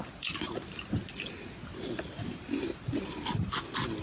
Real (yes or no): yes